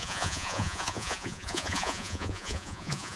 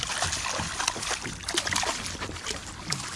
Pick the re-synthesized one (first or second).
first